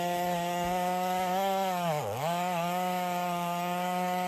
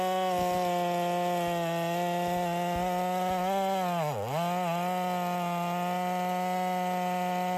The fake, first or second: first